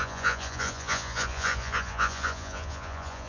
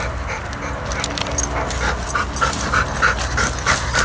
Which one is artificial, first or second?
first